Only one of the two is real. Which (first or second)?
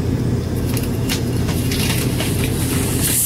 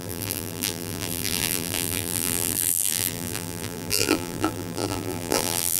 first